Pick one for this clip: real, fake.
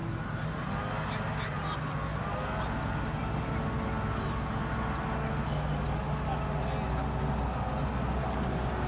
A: real